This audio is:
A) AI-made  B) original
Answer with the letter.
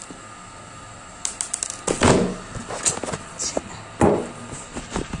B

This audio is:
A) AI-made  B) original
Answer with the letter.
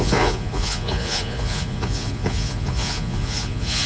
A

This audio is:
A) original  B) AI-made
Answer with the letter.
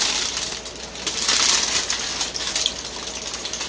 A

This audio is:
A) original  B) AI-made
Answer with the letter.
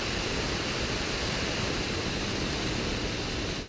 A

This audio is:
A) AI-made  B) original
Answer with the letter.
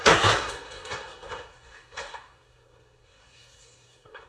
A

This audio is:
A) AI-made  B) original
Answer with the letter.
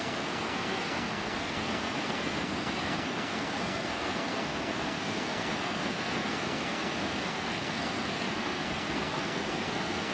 A